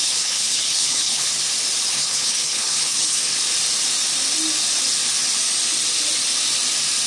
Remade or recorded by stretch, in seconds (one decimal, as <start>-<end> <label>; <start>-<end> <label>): 0.0-1.3 remade; 1.3-1.9 recorded; 1.9-3.2 remade; 3.2-7.1 recorded